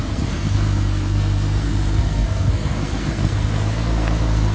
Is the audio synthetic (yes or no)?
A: yes